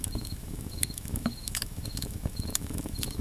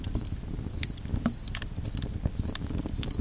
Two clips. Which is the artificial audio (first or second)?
first